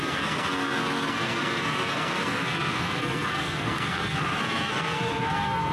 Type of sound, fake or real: fake